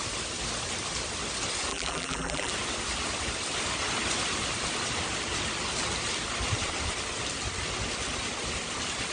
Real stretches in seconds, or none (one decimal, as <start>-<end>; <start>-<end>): 0.0-1.7; 2.5-9.1

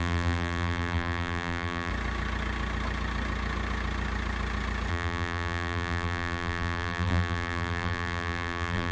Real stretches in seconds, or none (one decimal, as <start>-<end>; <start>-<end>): 1.9-4.9

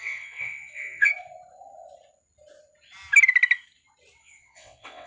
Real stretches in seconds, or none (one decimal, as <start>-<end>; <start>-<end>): 1.1-4.2

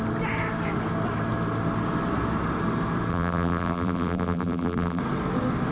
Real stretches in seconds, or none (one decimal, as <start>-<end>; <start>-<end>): 0.0-3.1; 5.0-5.7

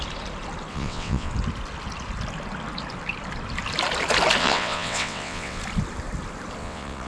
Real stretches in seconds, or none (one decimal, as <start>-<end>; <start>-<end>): 0.0-0.7; 1.3-4.4; 5.6-6.6